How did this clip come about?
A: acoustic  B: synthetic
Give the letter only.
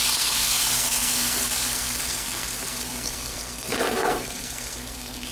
B